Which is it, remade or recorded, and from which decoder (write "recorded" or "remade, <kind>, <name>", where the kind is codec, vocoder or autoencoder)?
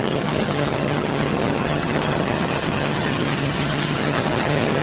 remade, vocoder, HiFi-GAN